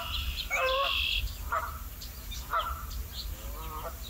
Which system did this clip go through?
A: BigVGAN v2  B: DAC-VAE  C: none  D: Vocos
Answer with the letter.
A